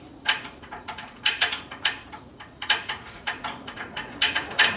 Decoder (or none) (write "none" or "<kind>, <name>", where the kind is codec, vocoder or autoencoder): vocoder, Vocos